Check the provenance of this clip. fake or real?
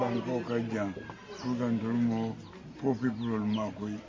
real